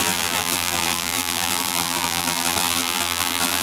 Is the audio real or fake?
fake